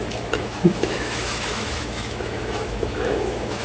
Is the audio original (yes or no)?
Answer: no